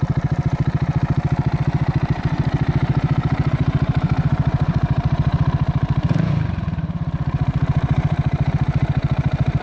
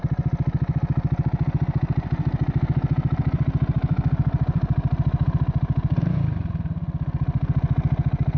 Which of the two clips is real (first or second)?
second